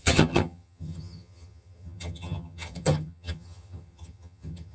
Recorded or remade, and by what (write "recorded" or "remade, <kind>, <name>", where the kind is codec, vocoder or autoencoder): remade, vocoder, HiFi-GAN